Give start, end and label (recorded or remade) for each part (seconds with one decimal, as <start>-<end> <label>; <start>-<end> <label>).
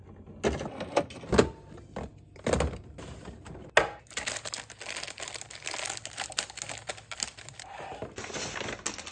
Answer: 0.0-9.1 recorded